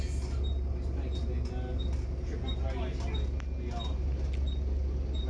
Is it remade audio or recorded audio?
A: recorded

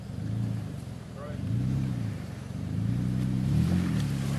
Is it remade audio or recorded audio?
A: remade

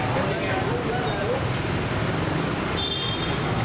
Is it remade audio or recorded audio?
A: recorded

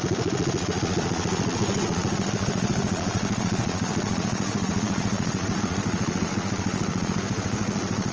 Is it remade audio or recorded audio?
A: remade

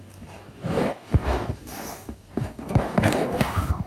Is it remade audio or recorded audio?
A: remade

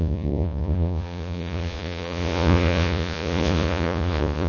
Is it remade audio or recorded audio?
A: remade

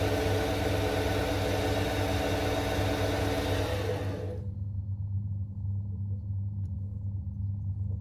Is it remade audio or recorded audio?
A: recorded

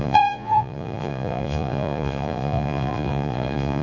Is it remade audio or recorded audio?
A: remade